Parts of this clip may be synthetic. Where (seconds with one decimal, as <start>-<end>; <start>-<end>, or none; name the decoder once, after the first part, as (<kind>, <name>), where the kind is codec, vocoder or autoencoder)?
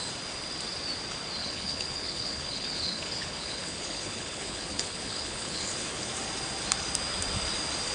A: 1.4-6.1 (codec, HILCodec)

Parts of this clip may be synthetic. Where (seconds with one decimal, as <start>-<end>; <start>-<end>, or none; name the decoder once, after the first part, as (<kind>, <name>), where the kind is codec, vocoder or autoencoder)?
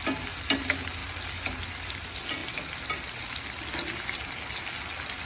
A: none